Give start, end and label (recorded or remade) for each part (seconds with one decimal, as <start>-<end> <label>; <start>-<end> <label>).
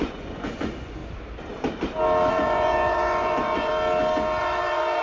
0.0-1.0 remade; 1.0-2.3 recorded; 2.3-3.7 remade; 3.7-4.4 recorded; 4.4-5.0 remade